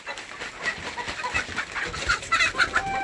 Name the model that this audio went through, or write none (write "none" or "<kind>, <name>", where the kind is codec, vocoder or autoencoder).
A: none